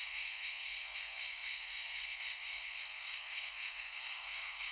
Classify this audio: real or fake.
fake